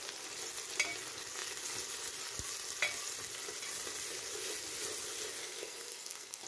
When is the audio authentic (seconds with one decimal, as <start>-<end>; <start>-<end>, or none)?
0.0-5.4